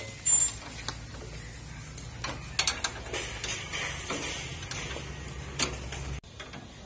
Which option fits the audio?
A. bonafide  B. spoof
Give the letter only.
A